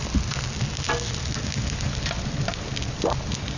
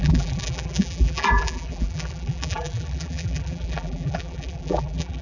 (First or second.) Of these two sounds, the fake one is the second